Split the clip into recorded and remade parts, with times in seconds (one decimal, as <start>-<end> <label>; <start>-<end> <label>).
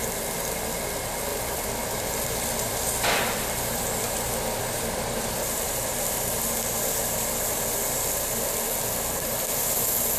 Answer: 0.0-1.3 recorded; 1.3-6.4 remade; 6.4-10.2 recorded